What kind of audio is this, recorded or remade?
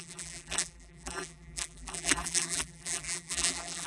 remade